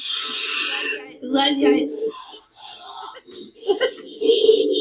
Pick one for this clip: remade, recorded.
recorded